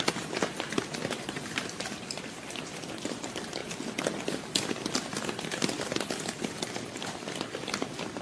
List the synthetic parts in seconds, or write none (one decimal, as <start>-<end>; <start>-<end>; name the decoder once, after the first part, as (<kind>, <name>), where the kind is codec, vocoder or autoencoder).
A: 0.0-3.6 (vocoder, BigVGAN v2); 4.3-8.2